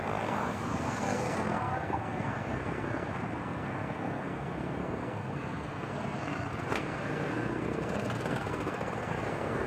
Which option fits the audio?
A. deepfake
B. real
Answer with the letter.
A